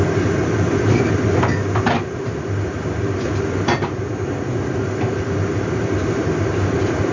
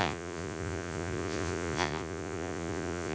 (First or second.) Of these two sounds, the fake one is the second